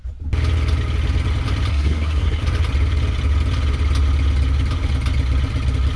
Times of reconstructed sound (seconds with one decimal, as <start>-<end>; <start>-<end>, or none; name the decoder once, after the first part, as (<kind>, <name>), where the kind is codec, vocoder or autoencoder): 1.7-2.4 (codec, SNAC)